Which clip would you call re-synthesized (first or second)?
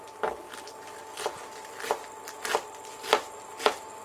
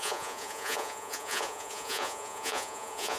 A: second